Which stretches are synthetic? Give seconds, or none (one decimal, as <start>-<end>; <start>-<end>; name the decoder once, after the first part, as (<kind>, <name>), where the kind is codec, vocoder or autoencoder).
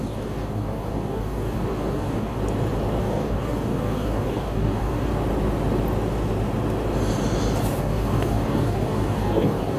0.0-2.4 (codec, DAC); 3.0-5.1; 7.8-9.8